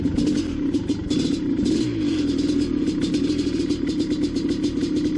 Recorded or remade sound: recorded